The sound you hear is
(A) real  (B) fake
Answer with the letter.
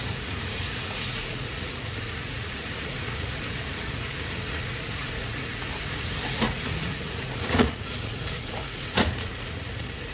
B